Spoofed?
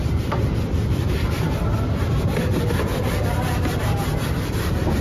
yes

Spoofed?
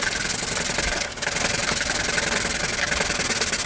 no